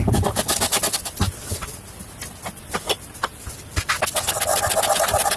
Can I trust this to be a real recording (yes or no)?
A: yes